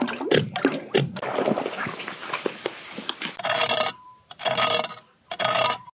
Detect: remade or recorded recorded